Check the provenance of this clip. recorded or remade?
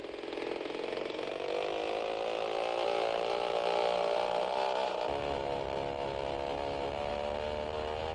recorded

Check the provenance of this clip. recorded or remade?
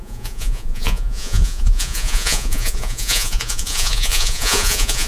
remade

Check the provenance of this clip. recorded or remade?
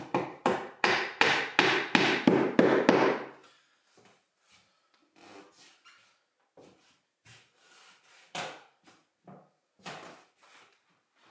recorded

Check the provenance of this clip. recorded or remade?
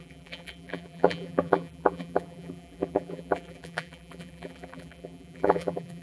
remade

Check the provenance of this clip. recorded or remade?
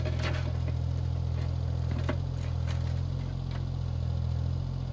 recorded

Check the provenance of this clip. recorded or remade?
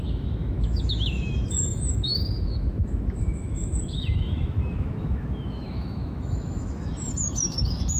remade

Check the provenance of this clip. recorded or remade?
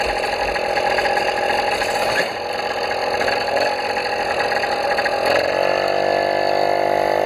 recorded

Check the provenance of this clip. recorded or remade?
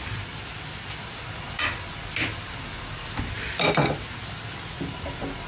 recorded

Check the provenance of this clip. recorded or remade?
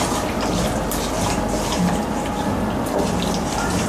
recorded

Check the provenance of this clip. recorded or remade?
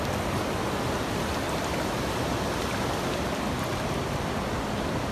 recorded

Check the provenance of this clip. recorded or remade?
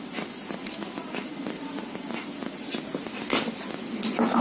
recorded